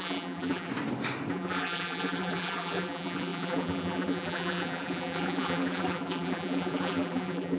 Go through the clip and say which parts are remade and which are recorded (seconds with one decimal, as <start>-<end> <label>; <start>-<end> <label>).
0.0-0.7 remade; 0.7-1.3 recorded; 1.3-7.6 remade

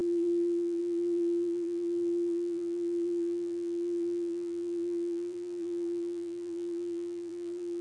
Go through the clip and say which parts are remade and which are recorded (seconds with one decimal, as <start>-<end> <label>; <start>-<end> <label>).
0.0-7.8 remade

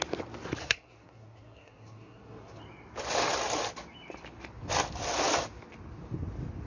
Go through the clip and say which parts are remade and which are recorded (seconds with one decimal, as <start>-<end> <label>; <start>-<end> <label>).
0.0-0.6 recorded; 0.6-2.6 remade; 2.6-6.7 recorded

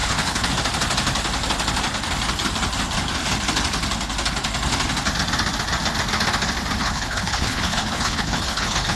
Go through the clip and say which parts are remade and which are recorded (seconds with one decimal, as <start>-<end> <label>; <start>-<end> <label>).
0.0-0.5 remade; 0.5-6.8 recorded; 6.8-9.0 remade

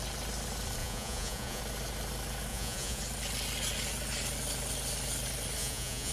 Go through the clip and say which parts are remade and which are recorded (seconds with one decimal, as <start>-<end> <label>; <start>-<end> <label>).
0.0-0.8 recorded; 0.8-1.6 remade; 1.6-2.5 recorded; 2.5-3.0 remade; 3.0-5.6 recorded; 5.6-6.1 remade